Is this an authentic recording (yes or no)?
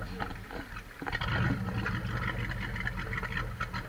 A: yes